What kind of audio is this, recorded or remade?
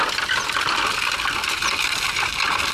recorded